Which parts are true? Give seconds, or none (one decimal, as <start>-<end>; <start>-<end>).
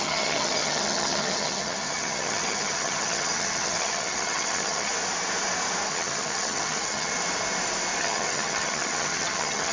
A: 4.9-5.9; 7.1-8.0